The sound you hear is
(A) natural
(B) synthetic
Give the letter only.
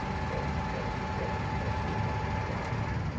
A